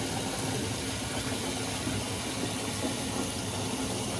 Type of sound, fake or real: real